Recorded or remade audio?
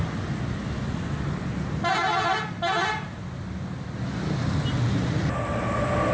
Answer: recorded